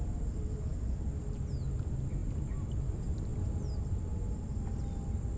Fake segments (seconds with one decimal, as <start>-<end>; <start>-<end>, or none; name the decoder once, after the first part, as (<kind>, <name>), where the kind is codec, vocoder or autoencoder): none

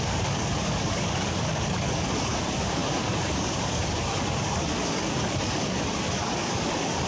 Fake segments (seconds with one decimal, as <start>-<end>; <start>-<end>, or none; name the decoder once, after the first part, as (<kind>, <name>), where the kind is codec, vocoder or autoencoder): 0.0-7.1 (codec, DAC)

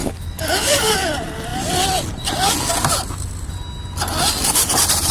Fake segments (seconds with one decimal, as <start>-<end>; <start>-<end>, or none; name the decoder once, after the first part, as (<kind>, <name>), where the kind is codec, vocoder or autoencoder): 0.0-1.1 (codec, DAC)